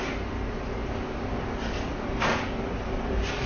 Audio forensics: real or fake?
real